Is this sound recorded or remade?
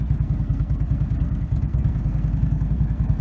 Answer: remade